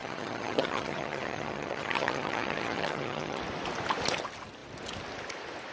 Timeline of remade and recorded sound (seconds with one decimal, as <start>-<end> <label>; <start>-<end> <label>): 0.0-3.4 remade; 3.4-5.7 recorded